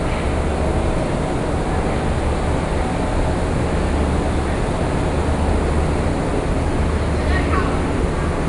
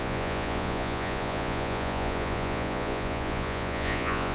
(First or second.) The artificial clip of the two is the second